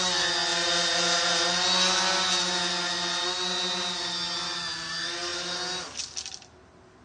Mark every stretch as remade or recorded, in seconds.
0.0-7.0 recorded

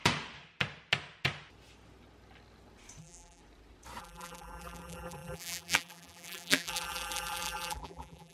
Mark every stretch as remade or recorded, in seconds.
0.0-3.0 recorded; 3.0-3.4 remade; 3.4-4.0 recorded; 4.0-8.3 remade

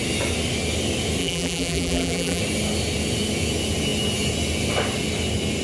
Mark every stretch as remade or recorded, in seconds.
0.0-1.2 recorded; 1.2-2.4 remade; 2.4-5.6 recorded

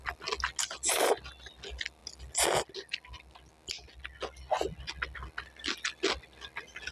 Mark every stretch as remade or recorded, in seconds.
0.0-6.9 recorded

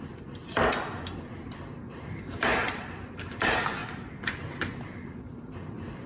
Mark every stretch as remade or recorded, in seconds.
0.0-0.4 remade; 0.4-1.9 recorded; 1.9-3.8 remade; 3.8-4.8 recorded; 4.8-6.1 remade

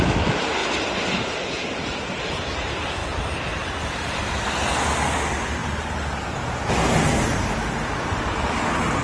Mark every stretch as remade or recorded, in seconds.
0.0-0.6 recorded; 0.6-2.2 remade; 2.2-5.6 recorded; 5.6-6.6 remade; 6.6-9.0 recorded

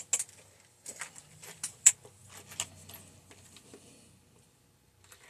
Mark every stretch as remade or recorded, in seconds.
0.0-1.2 recorded; 1.2-1.9 remade; 1.9-5.3 recorded

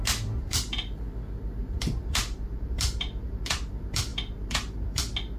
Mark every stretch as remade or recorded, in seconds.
0.0-0.4 recorded; 0.4-1.0 remade; 1.0-1.6 recorded; 1.6-3.6 remade; 3.6-4.1 recorded; 4.1-5.0 remade; 5.0-5.4 recorded